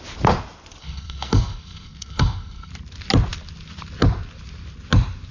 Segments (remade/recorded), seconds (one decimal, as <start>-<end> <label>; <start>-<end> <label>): 0.0-0.8 recorded; 0.8-2.7 remade; 2.7-5.3 recorded